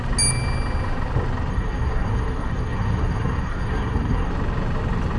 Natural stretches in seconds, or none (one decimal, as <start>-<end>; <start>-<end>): 0.0-1.5; 4.3-5.2